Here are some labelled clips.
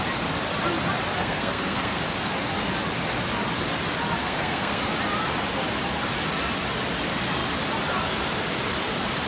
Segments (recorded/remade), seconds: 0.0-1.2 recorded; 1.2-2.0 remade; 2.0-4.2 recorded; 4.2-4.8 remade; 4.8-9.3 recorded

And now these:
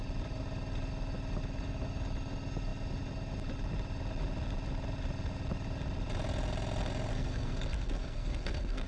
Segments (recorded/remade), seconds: 0.0-7.1 recorded; 7.1-8.9 remade

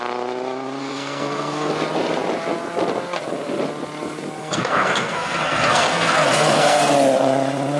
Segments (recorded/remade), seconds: 0.0-0.8 recorded; 0.8-1.7 remade; 1.7-4.4 recorded; 4.4-6.8 remade; 6.8-7.8 recorded

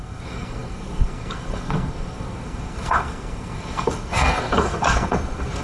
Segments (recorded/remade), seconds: 0.0-5.6 remade

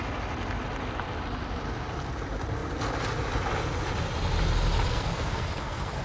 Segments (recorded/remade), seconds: 0.0-4.9 recorded; 4.9-6.0 remade